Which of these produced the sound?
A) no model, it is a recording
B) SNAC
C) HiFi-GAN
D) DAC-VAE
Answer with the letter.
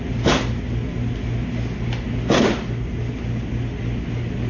A